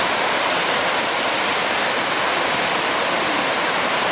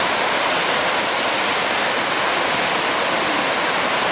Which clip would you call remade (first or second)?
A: first